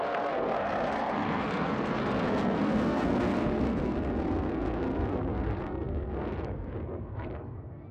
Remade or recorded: remade